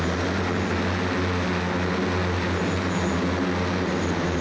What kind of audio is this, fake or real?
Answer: real